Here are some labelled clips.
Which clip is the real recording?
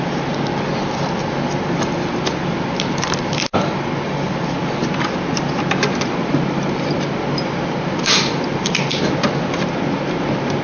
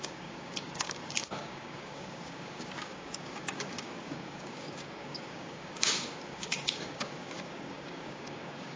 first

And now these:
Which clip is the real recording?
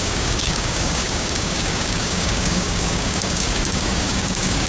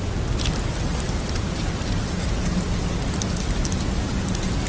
second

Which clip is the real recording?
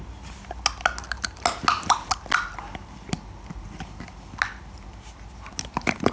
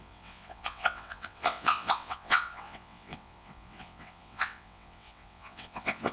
first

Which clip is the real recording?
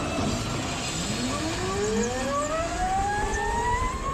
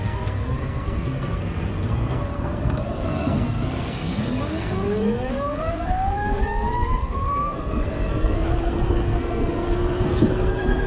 first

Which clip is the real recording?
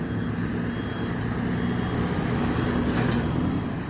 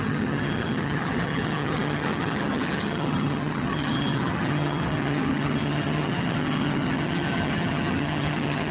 first